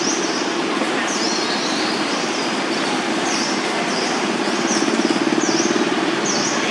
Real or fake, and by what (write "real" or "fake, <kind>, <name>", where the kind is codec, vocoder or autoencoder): real